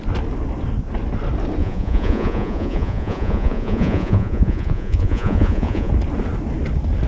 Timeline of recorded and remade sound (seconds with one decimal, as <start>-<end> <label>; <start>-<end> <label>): 0.0-1.6 recorded; 1.6-5.9 remade; 5.9-7.1 recorded